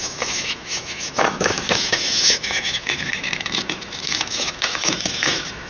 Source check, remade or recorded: remade